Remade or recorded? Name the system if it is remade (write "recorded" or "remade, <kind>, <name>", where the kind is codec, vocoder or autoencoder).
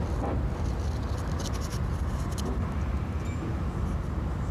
recorded